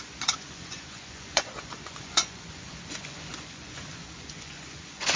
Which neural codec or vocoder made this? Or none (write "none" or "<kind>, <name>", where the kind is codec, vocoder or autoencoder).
vocoder, Vocos